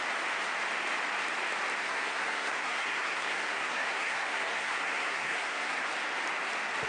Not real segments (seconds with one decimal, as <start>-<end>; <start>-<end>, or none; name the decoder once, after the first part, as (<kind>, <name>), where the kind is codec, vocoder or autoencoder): 1.8-5.9 (codec, SNAC)